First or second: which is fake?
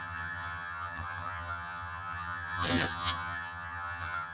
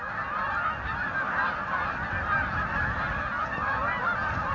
first